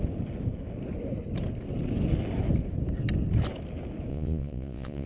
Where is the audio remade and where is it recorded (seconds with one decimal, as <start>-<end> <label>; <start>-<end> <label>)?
0.0-4.1 recorded; 4.1-5.1 remade